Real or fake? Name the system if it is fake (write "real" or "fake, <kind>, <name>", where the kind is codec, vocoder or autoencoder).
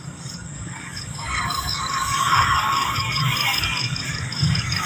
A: fake, codec, DAC